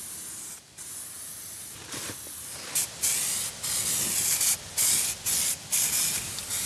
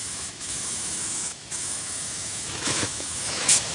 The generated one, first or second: second